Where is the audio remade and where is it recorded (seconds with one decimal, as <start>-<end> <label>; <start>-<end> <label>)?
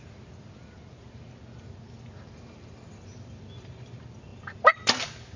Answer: 0.0-5.4 recorded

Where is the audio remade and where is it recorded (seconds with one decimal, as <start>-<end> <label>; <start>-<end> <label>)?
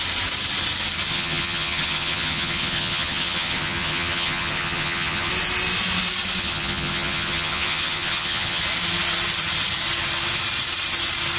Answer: 0.0-1.1 recorded; 1.1-5.3 remade; 5.3-6.4 recorded; 6.4-8.6 remade; 8.6-11.4 recorded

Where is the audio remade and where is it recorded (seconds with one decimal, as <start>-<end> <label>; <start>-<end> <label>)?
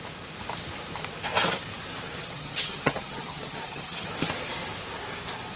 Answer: 0.0-2.2 recorded; 2.2-4.1 remade; 4.1-5.6 recorded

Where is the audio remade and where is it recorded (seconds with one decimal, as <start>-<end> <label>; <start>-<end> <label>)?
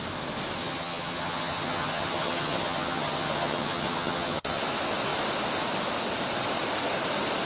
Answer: 0.0-0.6 recorded; 0.6-4.6 remade; 4.6-7.4 recorded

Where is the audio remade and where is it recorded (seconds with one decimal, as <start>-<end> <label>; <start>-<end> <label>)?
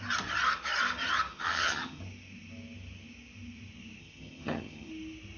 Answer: 0.0-1.3 recorded; 1.3-2.0 remade; 2.0-4.0 recorded; 4.0-4.9 remade; 4.9-5.4 recorded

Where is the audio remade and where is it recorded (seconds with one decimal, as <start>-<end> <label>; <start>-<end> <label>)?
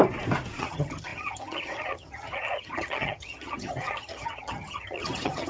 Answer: 0.0-0.6 recorded; 0.6-5.5 remade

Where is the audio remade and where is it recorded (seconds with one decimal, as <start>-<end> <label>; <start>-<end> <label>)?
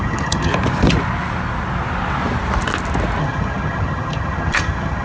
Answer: 0.0-0.5 remade; 0.5-3.2 recorded; 3.2-5.0 remade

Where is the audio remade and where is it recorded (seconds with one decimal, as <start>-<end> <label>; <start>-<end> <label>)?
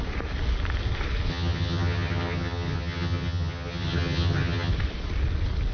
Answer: 0.0-1.3 recorded; 1.3-4.7 remade; 4.7-5.7 recorded